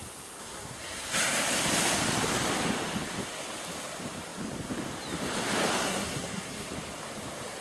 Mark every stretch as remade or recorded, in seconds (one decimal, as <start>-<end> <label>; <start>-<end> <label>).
0.0-0.4 recorded; 0.4-1.2 remade; 1.2-5.8 recorded; 5.8-6.7 remade; 6.7-7.6 recorded